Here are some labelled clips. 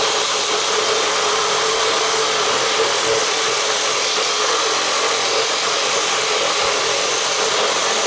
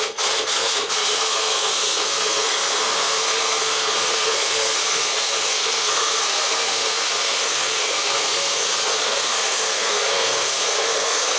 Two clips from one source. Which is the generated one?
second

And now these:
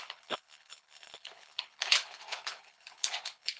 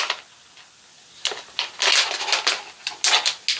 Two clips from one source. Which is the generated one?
first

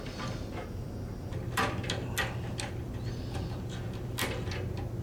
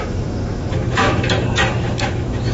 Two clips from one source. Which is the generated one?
second